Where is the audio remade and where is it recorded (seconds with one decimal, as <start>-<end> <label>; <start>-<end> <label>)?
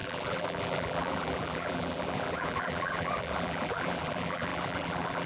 0.0-5.3 remade